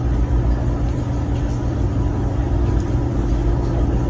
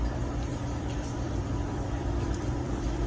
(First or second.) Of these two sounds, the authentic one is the first